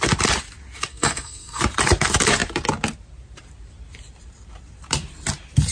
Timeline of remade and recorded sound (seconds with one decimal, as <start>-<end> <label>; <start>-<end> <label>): 0.0-0.9 recorded; 0.9-1.6 remade; 1.6-5.7 recorded